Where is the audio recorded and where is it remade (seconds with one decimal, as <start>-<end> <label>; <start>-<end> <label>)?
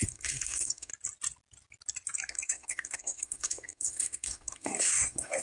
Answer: 0.0-0.9 remade; 0.9-2.3 recorded; 2.3-5.4 remade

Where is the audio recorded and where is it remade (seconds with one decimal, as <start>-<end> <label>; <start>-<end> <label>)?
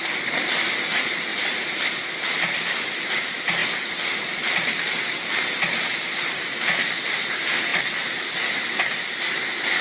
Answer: 0.0-1.3 recorded; 1.3-1.8 remade; 1.8-9.8 recorded